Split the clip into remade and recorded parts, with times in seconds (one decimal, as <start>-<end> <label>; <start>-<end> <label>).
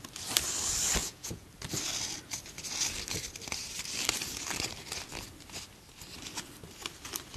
0.0-1.0 recorded; 1.0-1.5 remade; 1.5-7.4 recorded